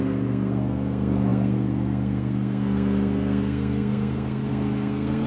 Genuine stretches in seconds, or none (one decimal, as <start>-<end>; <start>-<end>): none